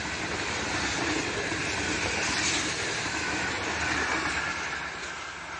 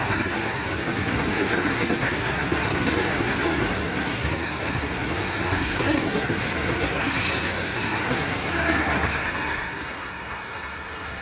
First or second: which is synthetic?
second